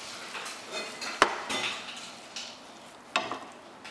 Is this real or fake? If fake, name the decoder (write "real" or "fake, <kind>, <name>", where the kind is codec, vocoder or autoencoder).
real